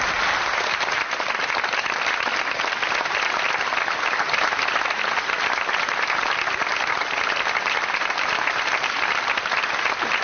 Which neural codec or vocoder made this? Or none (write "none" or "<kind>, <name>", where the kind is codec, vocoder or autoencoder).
none